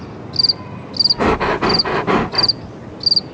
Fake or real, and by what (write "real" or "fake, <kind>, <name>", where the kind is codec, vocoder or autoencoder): real